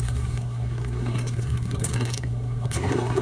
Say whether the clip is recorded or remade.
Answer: remade